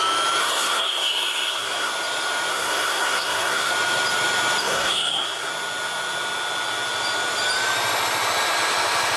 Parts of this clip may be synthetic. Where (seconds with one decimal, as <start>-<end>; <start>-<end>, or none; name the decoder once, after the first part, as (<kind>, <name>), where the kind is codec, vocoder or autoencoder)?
0.4-1.9 (codec, SNAC); 2.5-3.7; 4.6-5.5